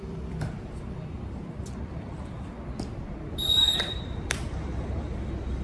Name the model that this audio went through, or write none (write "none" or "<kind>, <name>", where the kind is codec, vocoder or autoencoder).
vocoder, BigVGAN v2